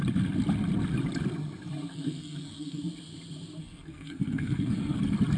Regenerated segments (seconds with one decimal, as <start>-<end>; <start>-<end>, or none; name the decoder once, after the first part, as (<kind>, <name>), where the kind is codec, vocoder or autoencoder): 1.9-2.8 (codec, SNAC); 3.6-5.0

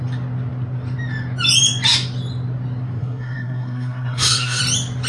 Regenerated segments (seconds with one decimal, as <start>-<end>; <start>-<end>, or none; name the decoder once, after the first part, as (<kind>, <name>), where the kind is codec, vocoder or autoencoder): 3.0-4.6 (codec, SNAC)

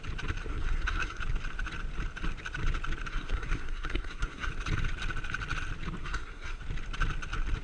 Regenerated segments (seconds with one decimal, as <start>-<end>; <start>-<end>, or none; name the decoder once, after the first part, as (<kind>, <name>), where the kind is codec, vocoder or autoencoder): 0.5-1.2 (codec, SNAC); 3.1-4.5; 6.0-6.6